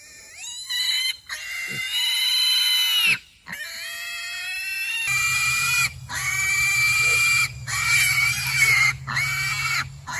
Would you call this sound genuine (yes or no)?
yes